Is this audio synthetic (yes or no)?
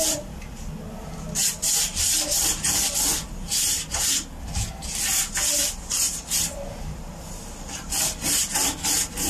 yes